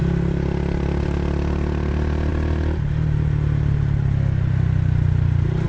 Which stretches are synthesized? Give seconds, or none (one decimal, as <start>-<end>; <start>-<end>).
none